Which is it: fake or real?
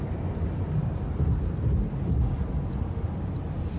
real